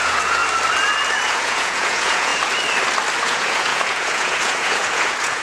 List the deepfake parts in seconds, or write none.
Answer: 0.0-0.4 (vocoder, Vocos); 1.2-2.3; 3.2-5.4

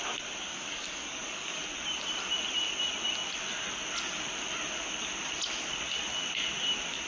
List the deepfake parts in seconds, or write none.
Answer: 0.5-1.6 (codec, DAC)

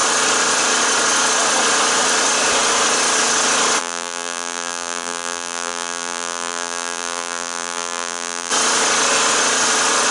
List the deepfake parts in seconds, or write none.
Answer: 3.8-8.5 (vocoder, BigVGAN v2)

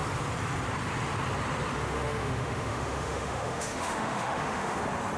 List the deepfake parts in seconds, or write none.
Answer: 1.7-4.8 (autoencoder, DAC-VAE)

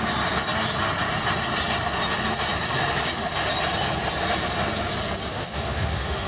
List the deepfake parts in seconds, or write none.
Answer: 5.3-6.3 (autoencoder, DAC-VAE)

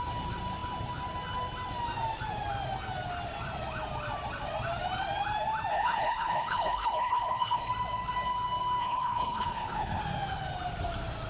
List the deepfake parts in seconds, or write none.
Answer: 5.7-7.7 (codec, HILCodec); 8.8-10.0